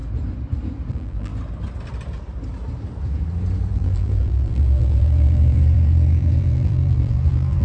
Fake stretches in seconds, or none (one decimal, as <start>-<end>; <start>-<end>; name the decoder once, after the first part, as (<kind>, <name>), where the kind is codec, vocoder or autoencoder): 0.9-1.3 (vocoder, BigVGAN v2); 3.7-7.6